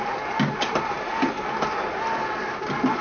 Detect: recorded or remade recorded